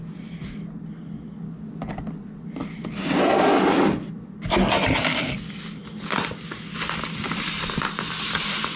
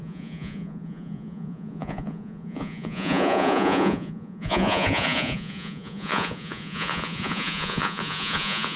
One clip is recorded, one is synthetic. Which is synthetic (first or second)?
second